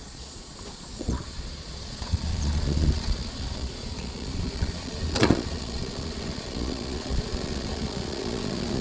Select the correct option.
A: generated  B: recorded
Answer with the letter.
A